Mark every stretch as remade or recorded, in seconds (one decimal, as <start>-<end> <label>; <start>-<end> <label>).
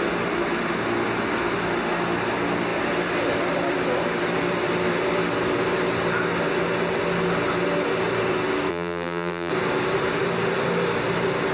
0.0-8.7 recorded; 8.7-9.5 remade; 9.5-11.5 recorded